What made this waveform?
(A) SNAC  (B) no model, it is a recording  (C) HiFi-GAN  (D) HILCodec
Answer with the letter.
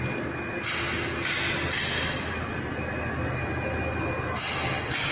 B